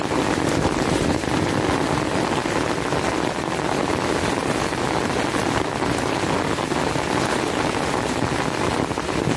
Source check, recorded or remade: recorded